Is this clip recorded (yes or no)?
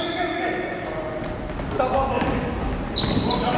yes